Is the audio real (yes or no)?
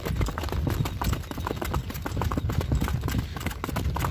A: yes